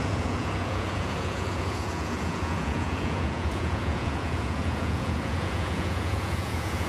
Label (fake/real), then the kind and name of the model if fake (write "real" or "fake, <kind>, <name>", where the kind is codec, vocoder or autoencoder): fake, vocoder, Vocos